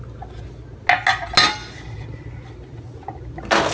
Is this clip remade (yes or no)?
no